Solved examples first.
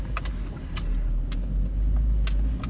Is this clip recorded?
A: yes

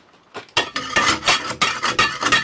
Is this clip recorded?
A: yes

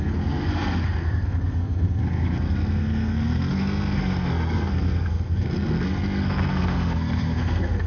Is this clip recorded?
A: no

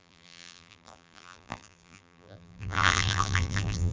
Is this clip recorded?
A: no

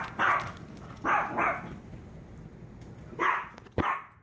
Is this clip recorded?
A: yes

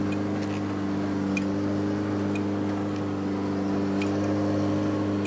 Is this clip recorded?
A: yes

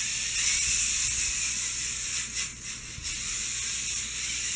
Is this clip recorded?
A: yes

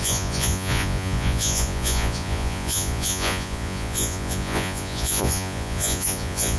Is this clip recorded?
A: no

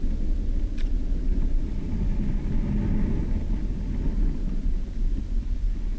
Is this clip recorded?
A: yes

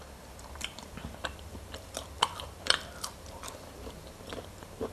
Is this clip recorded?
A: no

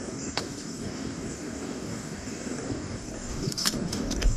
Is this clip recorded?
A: no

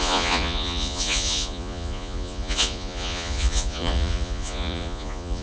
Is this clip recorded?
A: no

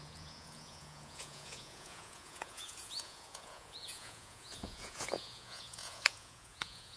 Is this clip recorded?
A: no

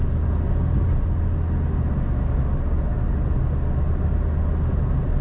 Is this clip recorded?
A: yes